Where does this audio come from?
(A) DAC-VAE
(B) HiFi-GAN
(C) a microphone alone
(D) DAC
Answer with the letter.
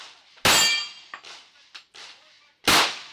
C